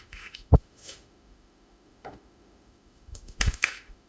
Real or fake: fake